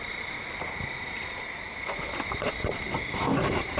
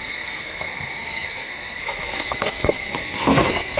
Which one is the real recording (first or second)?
first